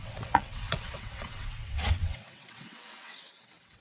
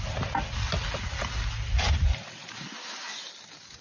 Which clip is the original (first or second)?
second